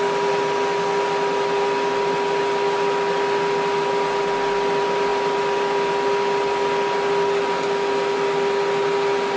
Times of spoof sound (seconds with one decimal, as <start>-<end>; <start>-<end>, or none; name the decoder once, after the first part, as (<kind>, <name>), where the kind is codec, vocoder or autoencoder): none